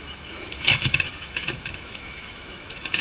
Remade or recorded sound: remade